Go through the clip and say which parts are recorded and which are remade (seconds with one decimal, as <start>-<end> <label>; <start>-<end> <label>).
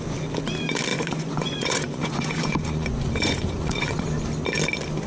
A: 0.0-0.9 recorded; 0.9-4.0 remade; 4.0-5.1 recorded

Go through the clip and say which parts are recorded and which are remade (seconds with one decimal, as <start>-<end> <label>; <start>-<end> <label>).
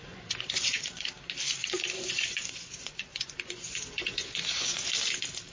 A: 0.0-1.1 remade; 1.1-1.6 recorded; 1.6-4.9 remade; 4.9-5.5 recorded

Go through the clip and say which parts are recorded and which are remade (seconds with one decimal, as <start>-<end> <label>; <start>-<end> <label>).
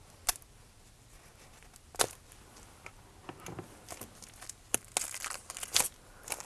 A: 0.0-6.5 recorded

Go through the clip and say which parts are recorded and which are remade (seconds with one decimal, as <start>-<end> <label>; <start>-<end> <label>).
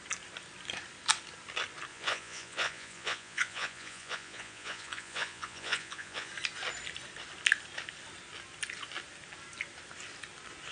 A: 0.0-1.9 recorded; 1.9-6.3 remade; 6.3-10.7 recorded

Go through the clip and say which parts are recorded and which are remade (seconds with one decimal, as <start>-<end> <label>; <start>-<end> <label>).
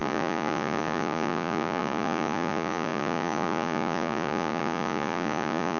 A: 0.0-5.8 remade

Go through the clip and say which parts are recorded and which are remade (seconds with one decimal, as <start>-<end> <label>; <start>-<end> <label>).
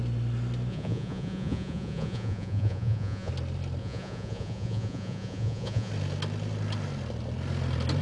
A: 0.0-0.7 recorded; 0.7-3.3 remade; 3.3-3.8 recorded; 3.8-5.9 remade; 5.9-8.0 recorded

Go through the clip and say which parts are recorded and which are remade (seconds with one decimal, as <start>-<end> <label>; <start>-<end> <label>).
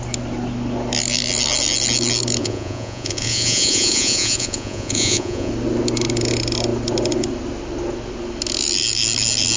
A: 0.0-2.4 recorded; 2.4-5.5 remade; 5.5-9.6 recorded